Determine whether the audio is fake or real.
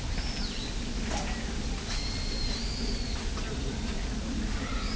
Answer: real